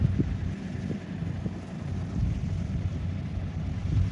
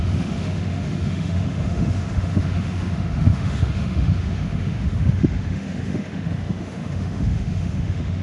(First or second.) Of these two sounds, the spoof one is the second